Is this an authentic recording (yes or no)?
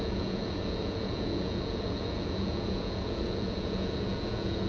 no